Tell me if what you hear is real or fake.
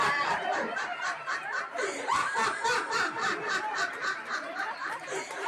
fake